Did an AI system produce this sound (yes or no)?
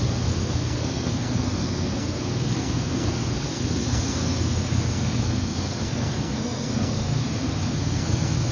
yes